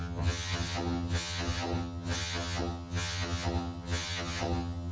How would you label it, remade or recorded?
remade